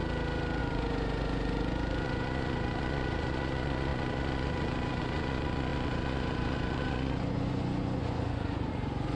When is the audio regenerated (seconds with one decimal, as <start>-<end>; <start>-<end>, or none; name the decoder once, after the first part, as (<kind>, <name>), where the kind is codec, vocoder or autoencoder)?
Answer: 0.6-9.2 (vocoder, Vocos)